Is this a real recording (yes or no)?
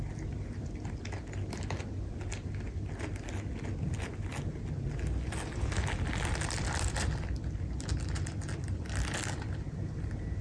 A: yes